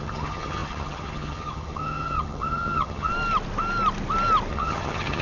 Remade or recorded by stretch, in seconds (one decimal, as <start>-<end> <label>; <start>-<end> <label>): 0.0-3.1 remade; 3.1-4.5 recorded; 4.5-5.2 remade